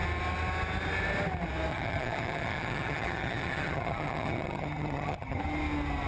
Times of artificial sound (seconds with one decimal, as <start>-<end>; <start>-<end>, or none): 1.7-5.4

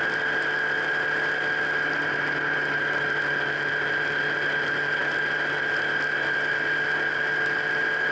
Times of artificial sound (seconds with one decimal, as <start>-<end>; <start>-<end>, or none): none

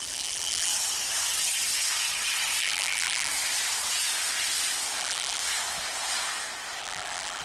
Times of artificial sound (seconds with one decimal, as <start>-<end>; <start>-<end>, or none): 0.0-0.7; 2.6-3.3; 5.0-5.4; 6.8-7.4